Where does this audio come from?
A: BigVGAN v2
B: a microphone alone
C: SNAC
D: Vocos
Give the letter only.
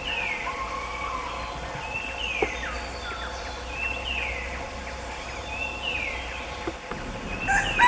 B